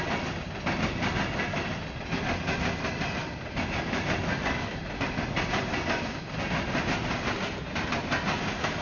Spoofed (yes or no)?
no